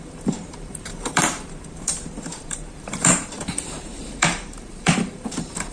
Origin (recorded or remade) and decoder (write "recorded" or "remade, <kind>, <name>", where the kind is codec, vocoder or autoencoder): remade, vocoder, BigVGAN v2